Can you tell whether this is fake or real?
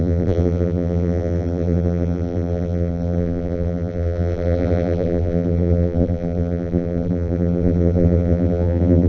fake